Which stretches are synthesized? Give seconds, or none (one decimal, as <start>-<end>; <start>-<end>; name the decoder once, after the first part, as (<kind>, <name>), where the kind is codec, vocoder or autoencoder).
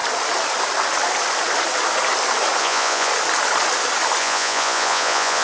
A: 2.6-3.1 (vocoder, Vocos); 4.2-5.4